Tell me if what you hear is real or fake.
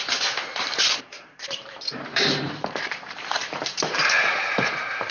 fake